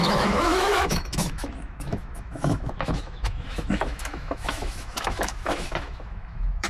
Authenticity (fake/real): fake